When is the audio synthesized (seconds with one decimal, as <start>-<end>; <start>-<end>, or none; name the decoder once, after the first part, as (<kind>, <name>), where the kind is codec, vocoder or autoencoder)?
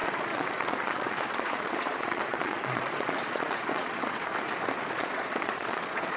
0.0-4.3 (vocoder, Vocos); 4.9-6.2